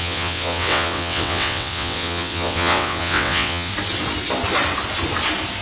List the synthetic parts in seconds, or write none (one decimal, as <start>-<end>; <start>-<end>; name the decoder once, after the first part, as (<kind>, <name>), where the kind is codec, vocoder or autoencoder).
0.0-3.7 (vocoder, WaveNeXt)